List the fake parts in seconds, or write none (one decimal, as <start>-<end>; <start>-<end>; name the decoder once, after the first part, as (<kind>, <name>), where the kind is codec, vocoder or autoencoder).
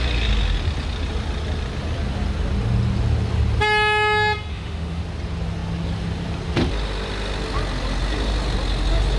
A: 4.5-5.0 (autoencoder, DAC-VAE)